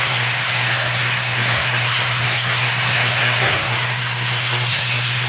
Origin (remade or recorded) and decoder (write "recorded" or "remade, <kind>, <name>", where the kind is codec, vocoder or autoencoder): remade, codec, SNAC